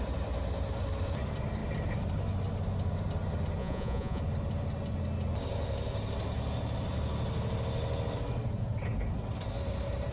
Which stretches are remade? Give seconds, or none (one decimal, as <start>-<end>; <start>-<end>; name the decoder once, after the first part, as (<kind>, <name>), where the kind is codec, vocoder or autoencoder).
3.6-4.2 (vocoder, Vocos)